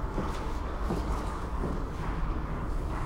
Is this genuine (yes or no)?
no